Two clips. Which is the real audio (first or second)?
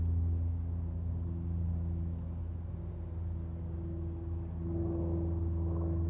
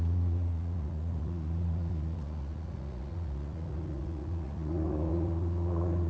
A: first